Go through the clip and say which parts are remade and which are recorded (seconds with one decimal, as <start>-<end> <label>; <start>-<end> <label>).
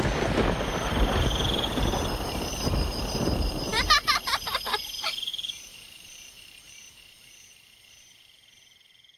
0.0-9.2 remade